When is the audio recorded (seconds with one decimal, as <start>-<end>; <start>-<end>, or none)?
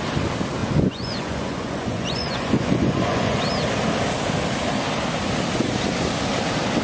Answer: 0.0-0.6; 3.4-6.8